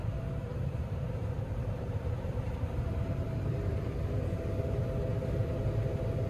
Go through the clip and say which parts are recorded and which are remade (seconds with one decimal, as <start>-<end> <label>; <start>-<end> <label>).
0.0-0.5 recorded; 0.5-4.0 remade; 4.0-6.3 recorded